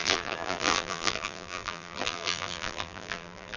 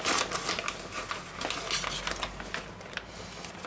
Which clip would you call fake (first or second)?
first